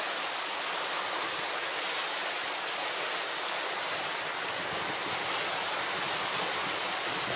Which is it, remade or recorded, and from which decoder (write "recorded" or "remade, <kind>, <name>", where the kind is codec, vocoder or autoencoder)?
recorded